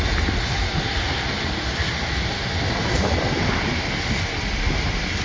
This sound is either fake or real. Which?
real